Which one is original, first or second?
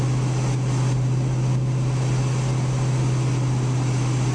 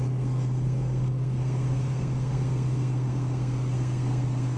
first